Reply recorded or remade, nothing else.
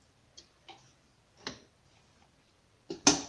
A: recorded